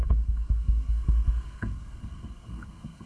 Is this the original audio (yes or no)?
no